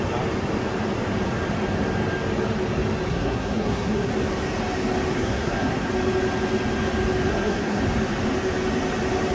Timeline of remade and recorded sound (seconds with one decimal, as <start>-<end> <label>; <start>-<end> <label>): 0.0-3.1 recorded; 3.1-4.1 remade; 4.1-5.1 recorded; 5.1-5.9 remade; 5.9-7.3 recorded; 7.3-7.8 remade; 7.8-9.3 recorded